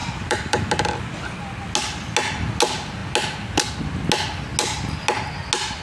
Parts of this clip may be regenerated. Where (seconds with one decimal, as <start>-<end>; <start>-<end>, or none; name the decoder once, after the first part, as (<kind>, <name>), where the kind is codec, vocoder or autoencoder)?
0.0-0.7 (vocoder, BigVGAN v2)